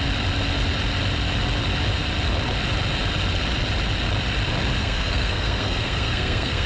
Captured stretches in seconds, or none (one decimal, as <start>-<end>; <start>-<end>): 0.0-4.8